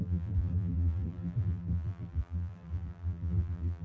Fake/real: fake